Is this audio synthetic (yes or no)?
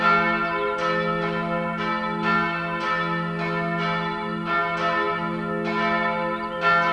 no